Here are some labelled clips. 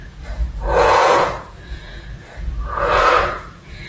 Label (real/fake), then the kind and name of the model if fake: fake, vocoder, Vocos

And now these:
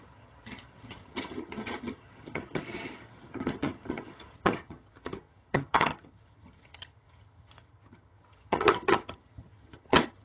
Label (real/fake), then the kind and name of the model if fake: fake, vocoder, HiFi-GAN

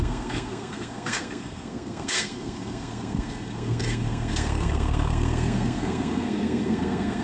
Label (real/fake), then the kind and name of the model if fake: fake, codec, SNAC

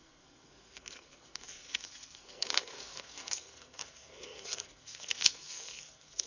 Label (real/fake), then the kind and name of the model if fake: fake, codec, SNAC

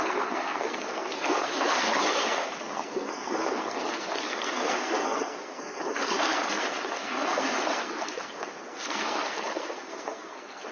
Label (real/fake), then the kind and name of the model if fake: fake, codec, SNAC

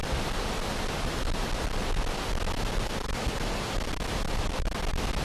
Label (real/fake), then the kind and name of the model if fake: real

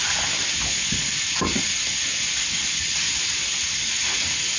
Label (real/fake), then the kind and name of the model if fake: real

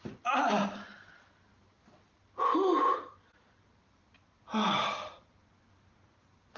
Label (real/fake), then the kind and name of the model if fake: real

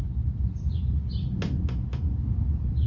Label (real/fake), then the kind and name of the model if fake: real